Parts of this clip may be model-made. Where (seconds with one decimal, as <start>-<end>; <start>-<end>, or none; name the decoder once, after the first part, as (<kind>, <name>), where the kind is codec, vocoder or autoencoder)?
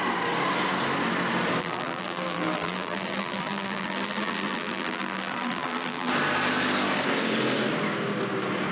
1.6-6.1 (vocoder, BigVGAN v2)